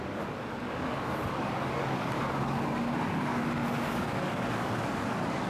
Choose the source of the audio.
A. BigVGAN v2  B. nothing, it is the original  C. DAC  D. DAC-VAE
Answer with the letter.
C